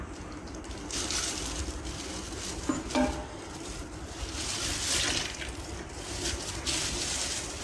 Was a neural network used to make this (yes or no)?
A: no